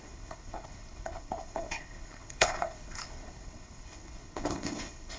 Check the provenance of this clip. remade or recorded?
remade